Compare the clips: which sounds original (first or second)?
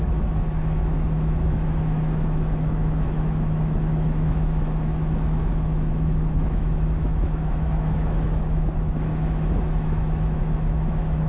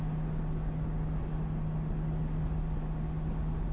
second